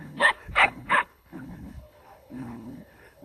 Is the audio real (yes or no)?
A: no